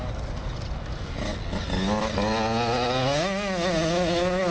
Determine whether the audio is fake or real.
real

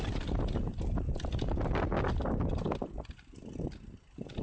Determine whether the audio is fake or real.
real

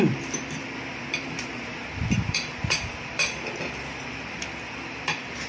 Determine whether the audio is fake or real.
fake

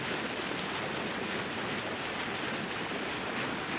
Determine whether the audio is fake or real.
real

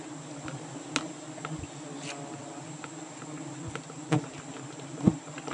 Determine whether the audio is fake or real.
real